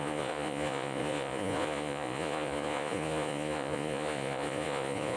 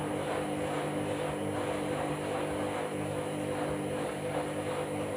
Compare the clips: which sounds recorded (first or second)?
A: second